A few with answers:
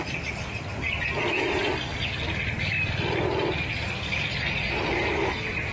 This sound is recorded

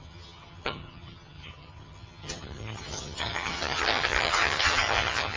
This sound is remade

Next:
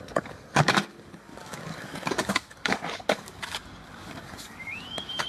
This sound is remade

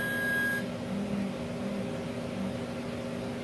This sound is recorded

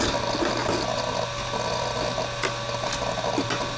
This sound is recorded